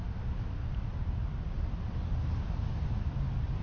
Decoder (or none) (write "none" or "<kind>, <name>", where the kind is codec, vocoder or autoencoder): none